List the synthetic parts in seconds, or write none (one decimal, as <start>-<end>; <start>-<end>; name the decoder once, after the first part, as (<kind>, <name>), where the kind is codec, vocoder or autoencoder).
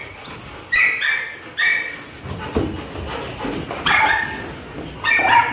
none